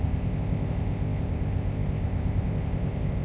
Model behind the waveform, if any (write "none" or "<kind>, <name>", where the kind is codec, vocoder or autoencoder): codec, ZipCodec